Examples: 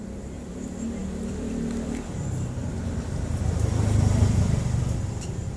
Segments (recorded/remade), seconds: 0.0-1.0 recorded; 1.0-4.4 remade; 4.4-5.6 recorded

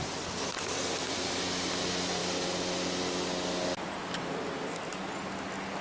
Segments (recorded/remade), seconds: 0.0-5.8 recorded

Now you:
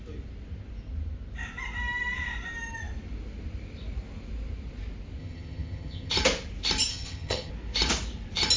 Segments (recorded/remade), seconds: 0.0-5.2 recorded; 5.2-6.1 remade; 6.1-6.9 recorded; 6.9-7.5 remade; 7.5-8.6 recorded

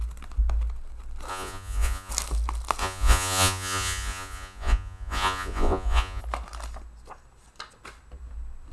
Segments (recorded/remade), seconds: 0.0-1.3 recorded; 1.3-2.1 remade; 2.1-2.8 recorded; 2.8-6.2 remade; 6.2-8.7 recorded

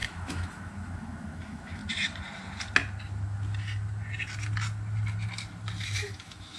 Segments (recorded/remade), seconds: 0.0-1.8 remade; 1.8-5.8 recorded; 5.8-6.6 remade

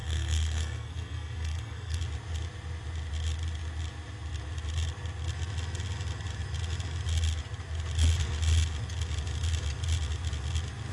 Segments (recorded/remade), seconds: 0.0-2.0 remade; 2.0-10.9 recorded